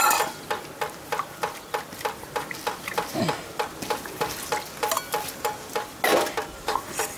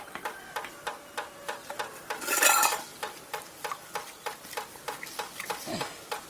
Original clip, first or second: first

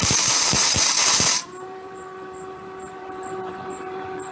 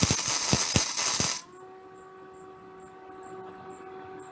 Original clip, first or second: second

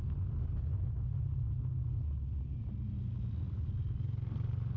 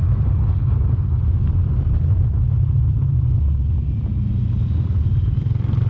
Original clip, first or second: first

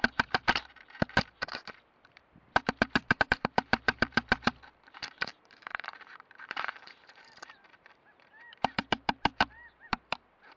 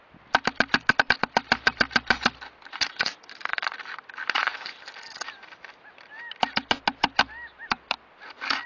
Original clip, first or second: second